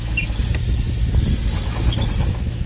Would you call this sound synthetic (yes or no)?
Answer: no